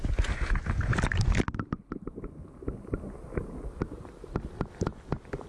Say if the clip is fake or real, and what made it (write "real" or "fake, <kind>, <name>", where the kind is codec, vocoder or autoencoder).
real